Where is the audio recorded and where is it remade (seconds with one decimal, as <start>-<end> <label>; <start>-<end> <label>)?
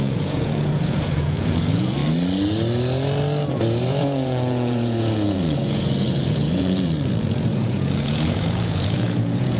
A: 0.0-2.0 remade; 2.0-3.9 recorded; 3.9-9.6 remade